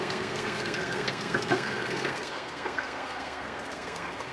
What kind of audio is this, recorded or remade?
remade